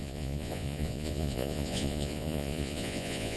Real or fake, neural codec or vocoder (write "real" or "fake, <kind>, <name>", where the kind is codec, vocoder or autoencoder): fake, vocoder, Vocos